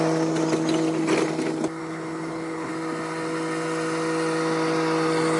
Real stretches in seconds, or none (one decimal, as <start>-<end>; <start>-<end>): 0.0-1.8; 2.7-5.4